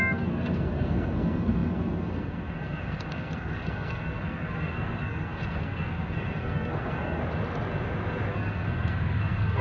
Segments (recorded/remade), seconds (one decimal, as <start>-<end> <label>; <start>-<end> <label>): 0.0-7.2 remade; 7.2-8.3 recorded; 8.3-9.6 remade